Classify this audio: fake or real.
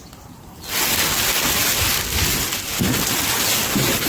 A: real